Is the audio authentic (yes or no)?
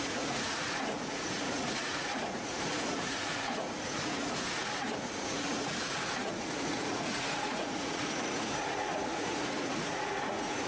no